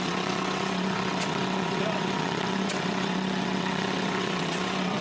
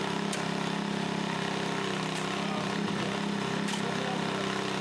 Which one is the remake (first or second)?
first